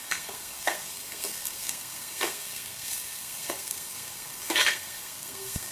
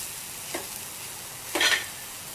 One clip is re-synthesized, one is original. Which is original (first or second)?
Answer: second